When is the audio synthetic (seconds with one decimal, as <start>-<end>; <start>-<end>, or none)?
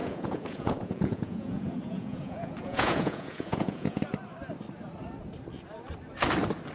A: 0.0-4.0